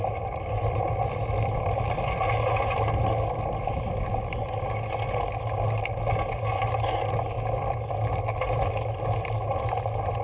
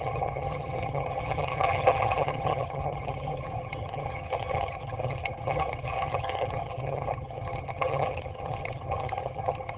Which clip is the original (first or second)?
first